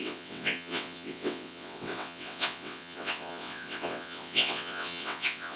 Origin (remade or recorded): remade